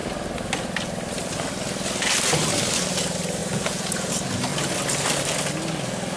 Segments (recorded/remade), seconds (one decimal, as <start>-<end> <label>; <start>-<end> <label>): 0.0-3.4 recorded; 3.4-4.1 remade; 4.1-6.2 recorded